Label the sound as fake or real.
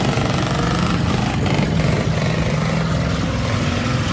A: real